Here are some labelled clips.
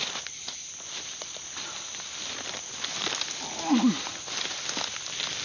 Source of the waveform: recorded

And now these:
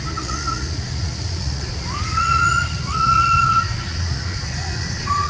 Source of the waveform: remade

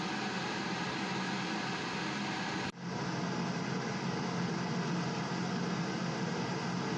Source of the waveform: recorded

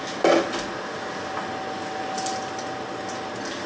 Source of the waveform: recorded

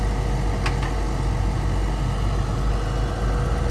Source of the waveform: recorded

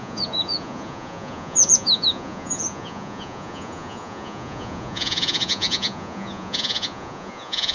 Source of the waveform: remade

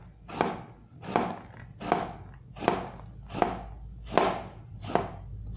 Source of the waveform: recorded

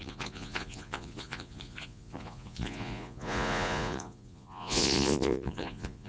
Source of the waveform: remade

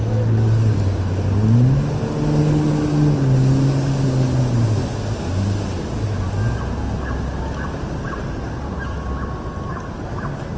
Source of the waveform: recorded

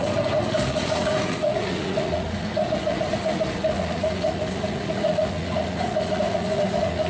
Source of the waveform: remade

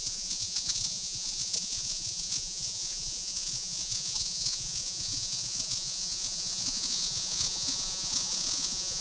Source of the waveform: remade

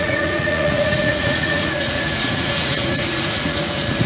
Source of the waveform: remade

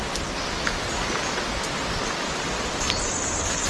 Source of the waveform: recorded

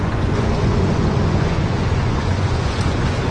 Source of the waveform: remade